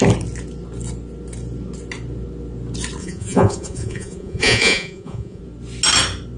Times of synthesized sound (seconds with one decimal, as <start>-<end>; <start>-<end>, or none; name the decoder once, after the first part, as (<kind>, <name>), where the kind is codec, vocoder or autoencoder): 3.0-5.4 (vocoder, Vocos)